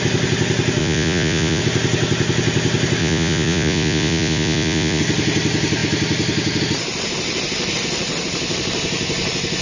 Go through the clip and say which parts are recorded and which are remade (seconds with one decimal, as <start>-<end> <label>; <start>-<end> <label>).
0.0-0.8 recorded; 0.8-1.6 remade; 1.6-3.0 recorded; 3.0-5.0 remade; 5.0-9.6 recorded